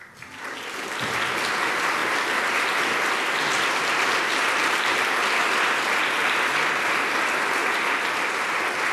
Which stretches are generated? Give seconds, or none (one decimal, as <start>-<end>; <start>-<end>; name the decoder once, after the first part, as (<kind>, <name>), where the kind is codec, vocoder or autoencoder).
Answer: none